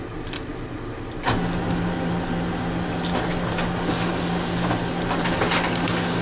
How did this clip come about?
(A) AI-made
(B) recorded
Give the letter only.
B